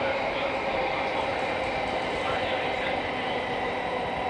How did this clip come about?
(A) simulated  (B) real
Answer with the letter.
B